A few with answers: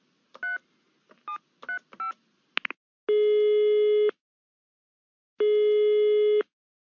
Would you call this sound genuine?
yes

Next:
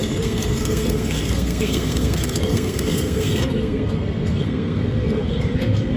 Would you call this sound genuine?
no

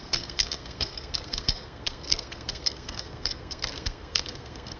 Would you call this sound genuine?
no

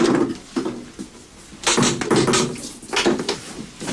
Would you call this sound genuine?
yes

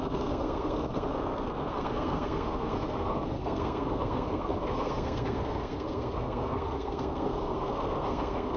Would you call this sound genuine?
no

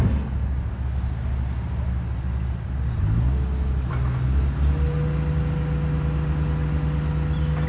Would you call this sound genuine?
yes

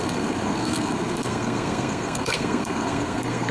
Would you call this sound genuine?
no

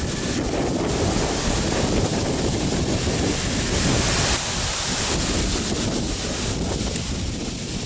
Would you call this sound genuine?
yes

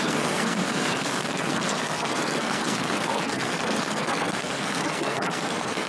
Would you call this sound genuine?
no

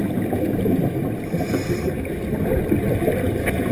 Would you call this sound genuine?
yes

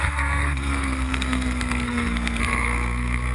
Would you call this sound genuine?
no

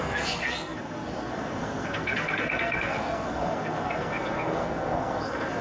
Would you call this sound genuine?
no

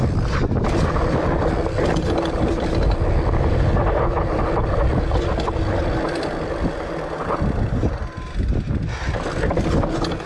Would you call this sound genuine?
yes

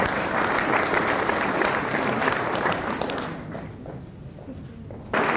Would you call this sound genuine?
yes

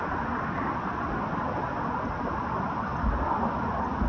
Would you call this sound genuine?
yes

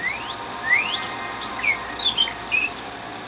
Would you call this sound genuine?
yes